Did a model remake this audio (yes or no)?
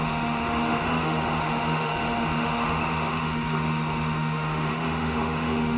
yes